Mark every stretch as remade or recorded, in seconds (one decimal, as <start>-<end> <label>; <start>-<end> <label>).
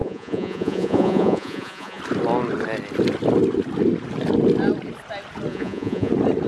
0.0-2.0 remade; 2.0-5.5 recorded; 5.5-6.1 remade; 6.1-6.5 recorded